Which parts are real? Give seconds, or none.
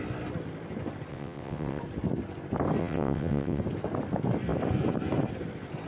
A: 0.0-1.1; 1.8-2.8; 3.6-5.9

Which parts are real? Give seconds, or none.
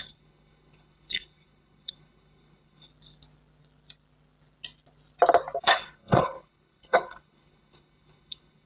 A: 2.9-5.6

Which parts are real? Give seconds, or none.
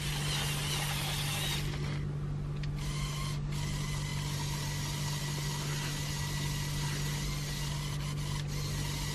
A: 0.0-9.1